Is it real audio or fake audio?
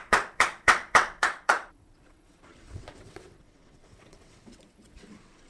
fake